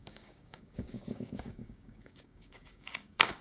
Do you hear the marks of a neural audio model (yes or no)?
yes